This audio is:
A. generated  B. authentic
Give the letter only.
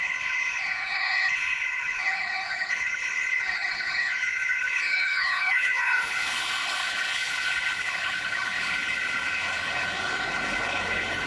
A